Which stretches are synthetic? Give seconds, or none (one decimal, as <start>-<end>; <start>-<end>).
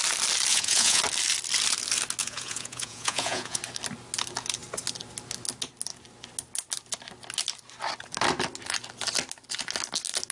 0.5-1.0; 2.2-3.6